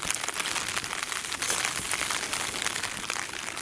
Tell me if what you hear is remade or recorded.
recorded